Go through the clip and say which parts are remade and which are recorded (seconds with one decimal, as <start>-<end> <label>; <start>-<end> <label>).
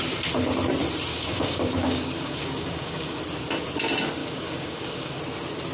0.0-1.1 recorded; 1.1-3.2 remade; 3.2-4.2 recorded; 4.2-5.2 remade; 5.2-5.7 recorded